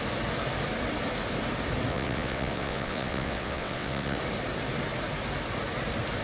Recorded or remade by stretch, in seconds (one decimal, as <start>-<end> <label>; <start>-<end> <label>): 0.0-1.9 recorded; 1.9-4.2 remade; 4.2-6.2 recorded